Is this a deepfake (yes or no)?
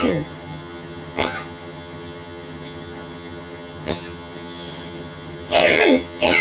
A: yes